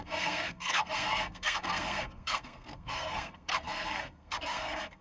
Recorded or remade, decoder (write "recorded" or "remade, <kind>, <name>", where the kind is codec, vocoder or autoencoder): remade, codec, SNAC